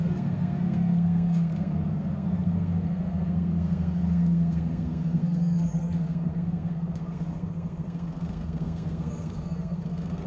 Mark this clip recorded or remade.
remade